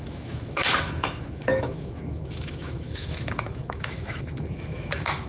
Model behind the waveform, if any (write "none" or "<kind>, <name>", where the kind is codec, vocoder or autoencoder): autoencoder, DAC-VAE